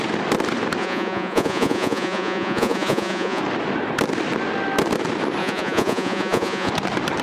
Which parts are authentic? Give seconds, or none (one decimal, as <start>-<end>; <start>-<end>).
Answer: 0.0-0.8; 3.4-5.4; 6.7-7.2